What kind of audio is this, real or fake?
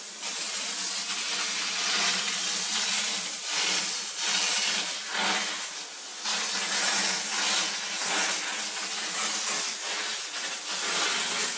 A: real